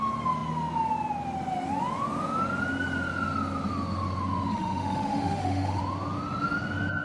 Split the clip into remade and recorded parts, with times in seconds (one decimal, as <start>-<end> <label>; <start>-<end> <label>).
0.0-4.5 recorded; 4.5-5.8 remade; 5.8-7.0 recorded